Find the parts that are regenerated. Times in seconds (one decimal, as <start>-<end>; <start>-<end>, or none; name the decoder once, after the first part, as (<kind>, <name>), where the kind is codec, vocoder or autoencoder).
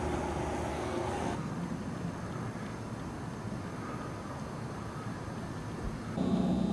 0.7-1.5 (codec, SNAC)